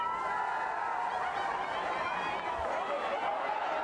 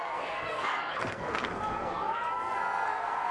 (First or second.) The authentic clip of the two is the first